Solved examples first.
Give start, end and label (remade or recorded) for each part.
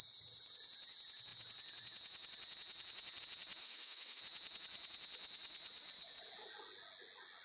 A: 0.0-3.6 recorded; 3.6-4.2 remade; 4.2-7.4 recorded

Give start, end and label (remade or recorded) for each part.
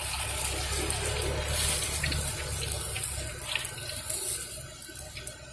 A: 0.0-5.5 recorded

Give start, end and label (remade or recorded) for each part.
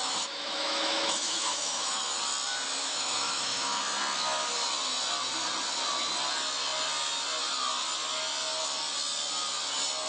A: 0.0-2.0 remade; 2.0-2.8 recorded; 2.8-3.8 remade; 3.8-10.1 recorded